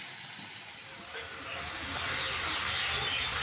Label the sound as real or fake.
real